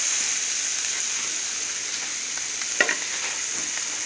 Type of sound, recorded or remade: recorded